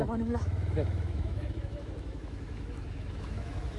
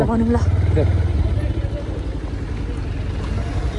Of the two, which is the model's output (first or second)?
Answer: first